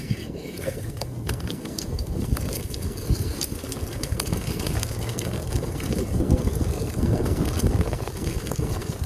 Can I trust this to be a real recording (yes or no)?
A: no